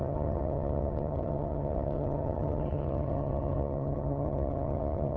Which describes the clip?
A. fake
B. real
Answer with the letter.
A